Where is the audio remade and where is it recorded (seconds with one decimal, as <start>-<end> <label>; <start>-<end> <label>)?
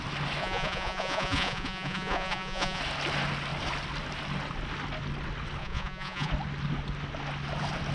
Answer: 0.0-0.4 recorded; 0.4-2.8 remade; 2.8-5.6 recorded; 5.6-6.3 remade; 6.3-7.9 recorded